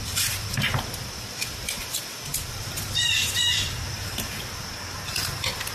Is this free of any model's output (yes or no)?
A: no